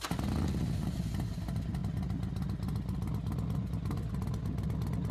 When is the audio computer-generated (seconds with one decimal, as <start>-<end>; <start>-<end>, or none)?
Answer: none